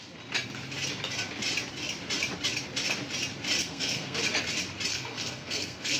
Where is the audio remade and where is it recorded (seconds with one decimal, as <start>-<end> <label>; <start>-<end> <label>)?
0.0-3.6 recorded; 3.6-4.2 remade; 4.2-4.9 recorded; 4.9-6.0 remade